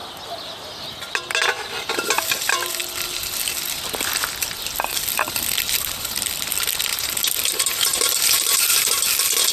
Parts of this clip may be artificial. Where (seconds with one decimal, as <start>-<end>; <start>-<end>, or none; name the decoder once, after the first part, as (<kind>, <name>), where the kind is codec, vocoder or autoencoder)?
6.9-9.0 (vocoder, BigVGAN v2)